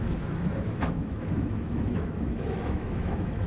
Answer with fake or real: fake